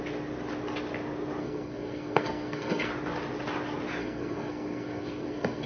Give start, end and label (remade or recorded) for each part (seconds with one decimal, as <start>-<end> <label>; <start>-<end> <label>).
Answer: 0.0-1.4 recorded; 1.4-2.9 remade; 2.9-4.0 recorded; 4.0-5.7 remade

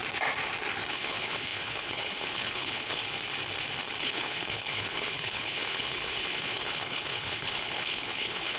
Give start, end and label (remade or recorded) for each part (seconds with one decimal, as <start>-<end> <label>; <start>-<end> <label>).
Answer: 0.0-0.9 recorded; 0.9-3.0 remade; 3.0-4.0 recorded; 4.0-8.6 remade